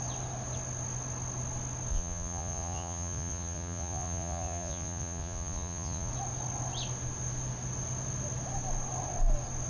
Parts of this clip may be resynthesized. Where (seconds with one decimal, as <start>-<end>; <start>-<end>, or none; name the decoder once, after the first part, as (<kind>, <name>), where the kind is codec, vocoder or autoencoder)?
1.9-6.1 (vocoder, Vocos)